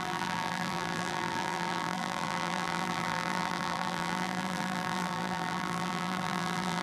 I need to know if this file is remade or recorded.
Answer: remade